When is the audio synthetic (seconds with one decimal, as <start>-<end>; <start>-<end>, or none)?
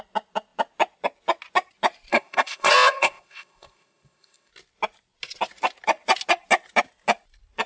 2.1-4.5